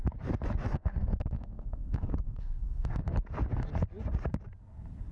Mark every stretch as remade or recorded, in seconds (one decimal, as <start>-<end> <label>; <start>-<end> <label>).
0.0-0.7 recorded; 0.7-3.0 remade; 3.0-5.1 recorded